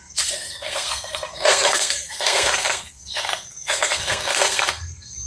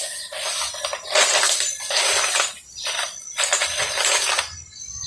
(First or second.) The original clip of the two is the second